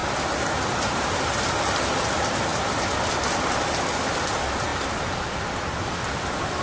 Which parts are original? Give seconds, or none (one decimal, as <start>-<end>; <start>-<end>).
0.0-4.7